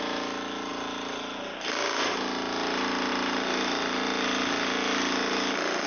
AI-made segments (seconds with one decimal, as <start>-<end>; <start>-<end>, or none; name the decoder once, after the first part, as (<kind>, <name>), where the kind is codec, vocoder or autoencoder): none

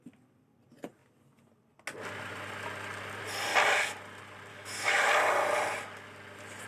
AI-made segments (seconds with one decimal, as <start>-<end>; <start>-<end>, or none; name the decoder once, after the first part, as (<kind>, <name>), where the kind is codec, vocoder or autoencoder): 4.5-5.1 (autoencoder, DAC-VAE)

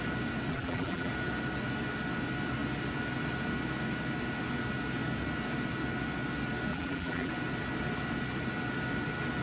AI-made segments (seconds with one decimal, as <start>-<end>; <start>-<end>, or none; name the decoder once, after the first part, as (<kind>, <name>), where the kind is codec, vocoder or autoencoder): 0.5-1.1 (vocoder, BigVGAN v2); 6.7-7.3

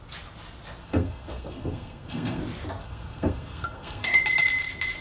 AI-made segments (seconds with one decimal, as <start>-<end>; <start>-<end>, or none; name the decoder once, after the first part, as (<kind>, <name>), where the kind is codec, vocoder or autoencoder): 0.8-2.4 (codec, SNAC); 2.8-4.2

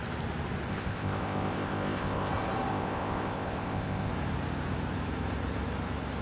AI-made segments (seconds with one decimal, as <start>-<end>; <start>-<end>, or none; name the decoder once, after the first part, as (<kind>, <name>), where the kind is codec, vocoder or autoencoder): 0.7-2.3 (codec, ZipCodec); 2.7-4.1